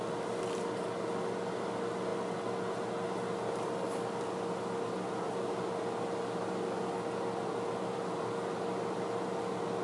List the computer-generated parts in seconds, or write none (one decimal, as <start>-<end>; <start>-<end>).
none